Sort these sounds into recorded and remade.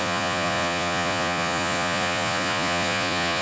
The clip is remade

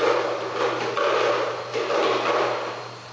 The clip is recorded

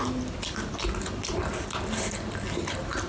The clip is recorded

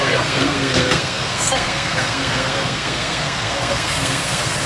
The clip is remade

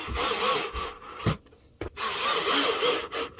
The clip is recorded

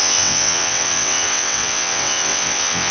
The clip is remade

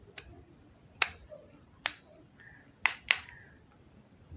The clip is recorded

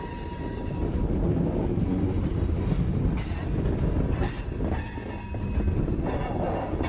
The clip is recorded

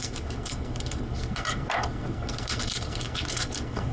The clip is remade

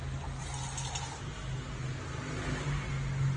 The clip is recorded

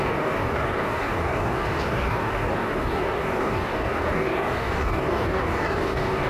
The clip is remade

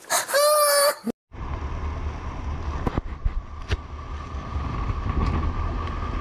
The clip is recorded